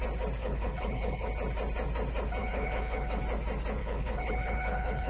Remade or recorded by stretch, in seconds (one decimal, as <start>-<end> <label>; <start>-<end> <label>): 0.0-0.4 recorded; 0.4-1.3 remade; 1.3-2.4 recorded; 2.4-3.2 remade; 3.2-3.8 recorded; 3.8-5.1 remade